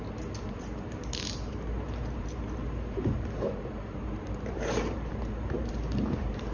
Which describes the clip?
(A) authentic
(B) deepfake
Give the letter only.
B